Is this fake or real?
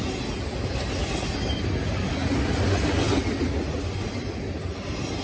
real